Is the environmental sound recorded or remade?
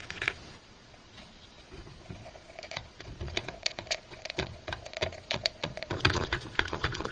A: remade